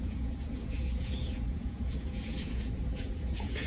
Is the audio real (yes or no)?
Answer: no